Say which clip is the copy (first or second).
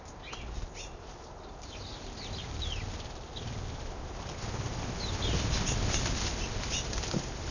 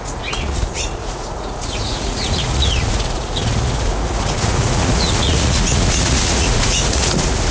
second